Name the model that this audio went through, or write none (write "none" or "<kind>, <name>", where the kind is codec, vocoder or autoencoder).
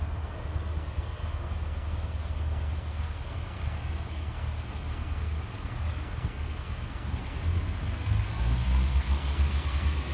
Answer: codec, SNAC